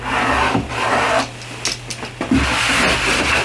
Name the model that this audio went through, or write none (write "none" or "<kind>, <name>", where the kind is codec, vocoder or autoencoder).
none